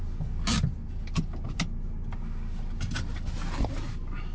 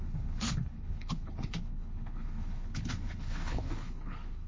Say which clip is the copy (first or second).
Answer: second